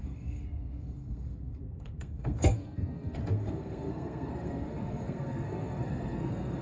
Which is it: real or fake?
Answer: fake